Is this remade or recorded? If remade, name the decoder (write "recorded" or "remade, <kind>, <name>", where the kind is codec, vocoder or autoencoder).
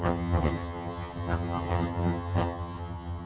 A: remade, vocoder, HiFi-GAN